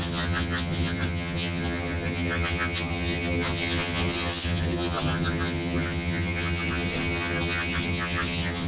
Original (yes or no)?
no